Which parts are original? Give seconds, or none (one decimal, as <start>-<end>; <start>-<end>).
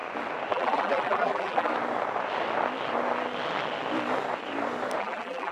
0.0-0.5; 1.7-5.0